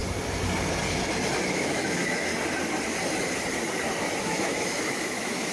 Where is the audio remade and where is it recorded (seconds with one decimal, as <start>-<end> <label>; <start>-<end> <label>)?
0.0-1.5 recorded; 1.5-2.3 remade; 2.3-4.2 recorded; 4.2-5.5 remade